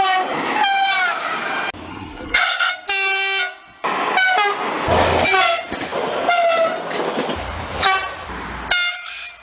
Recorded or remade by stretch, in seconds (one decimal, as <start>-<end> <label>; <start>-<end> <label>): 0.0-1.9 recorded; 1.9-2.7 remade; 2.7-9.4 recorded